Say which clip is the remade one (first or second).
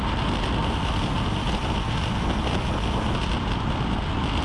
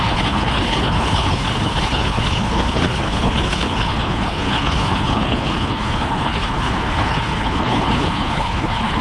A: second